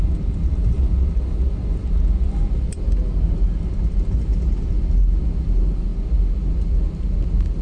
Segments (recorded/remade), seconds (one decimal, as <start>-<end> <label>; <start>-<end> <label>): 0.0-7.6 recorded